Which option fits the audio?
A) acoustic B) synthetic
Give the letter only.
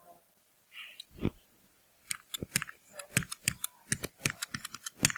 B